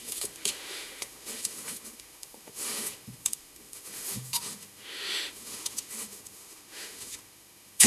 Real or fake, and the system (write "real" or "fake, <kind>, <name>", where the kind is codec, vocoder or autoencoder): fake, autoencoder, DAC-VAE